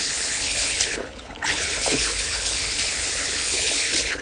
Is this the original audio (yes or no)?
no